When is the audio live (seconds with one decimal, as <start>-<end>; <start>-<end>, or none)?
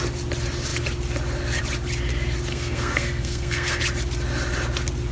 0.0-2.5; 3.8-5.1